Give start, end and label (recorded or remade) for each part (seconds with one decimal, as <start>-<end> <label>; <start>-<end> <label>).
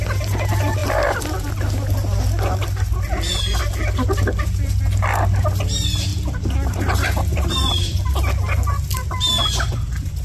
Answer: 0.0-7.3 recorded; 7.3-8.3 remade; 8.3-10.2 recorded